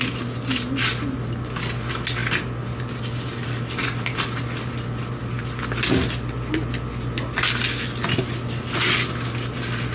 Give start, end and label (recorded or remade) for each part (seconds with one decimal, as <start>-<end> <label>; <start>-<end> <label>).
0.0-9.9 recorded